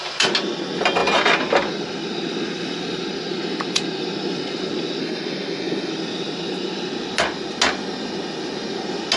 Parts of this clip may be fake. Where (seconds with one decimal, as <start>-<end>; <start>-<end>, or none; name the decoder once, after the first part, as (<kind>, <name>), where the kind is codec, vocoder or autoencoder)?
5.0-5.9 (codec, SNAC)